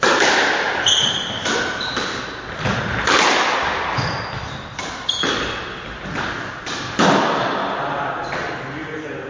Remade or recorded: recorded